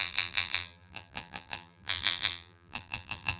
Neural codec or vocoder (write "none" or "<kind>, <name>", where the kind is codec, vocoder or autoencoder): vocoder, BigVGAN v2